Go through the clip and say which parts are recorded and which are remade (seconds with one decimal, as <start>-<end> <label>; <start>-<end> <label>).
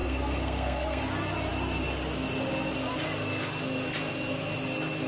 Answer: 0.0-1.0 remade; 1.0-5.1 recorded